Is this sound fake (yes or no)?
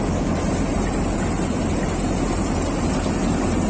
no